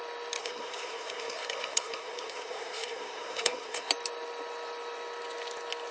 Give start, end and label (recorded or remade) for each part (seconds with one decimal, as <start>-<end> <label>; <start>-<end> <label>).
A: 0.0-0.4 recorded; 0.4-3.9 remade; 3.9-5.9 recorded